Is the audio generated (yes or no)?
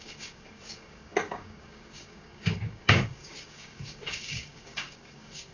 yes